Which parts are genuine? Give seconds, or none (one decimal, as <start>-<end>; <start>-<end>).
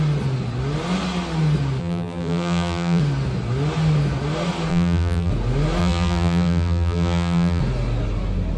0.0-1.8; 3.0-4.7; 5.3-5.8; 7.6-8.6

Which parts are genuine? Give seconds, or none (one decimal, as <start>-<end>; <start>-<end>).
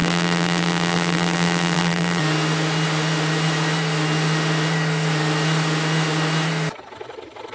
2.2-7.5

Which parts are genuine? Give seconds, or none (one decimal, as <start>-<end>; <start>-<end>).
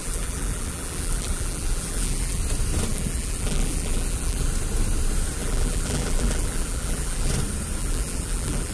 2.4-2.9; 4.5-5.4; 7.3-7.8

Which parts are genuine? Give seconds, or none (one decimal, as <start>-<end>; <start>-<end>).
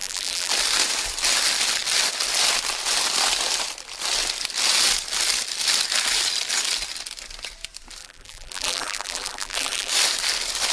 0.5-8.0; 9.9-10.7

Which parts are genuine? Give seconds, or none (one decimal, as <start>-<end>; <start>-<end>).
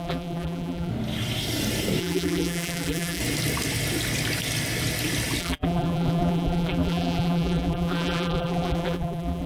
0.9-2.0; 3.2-5.4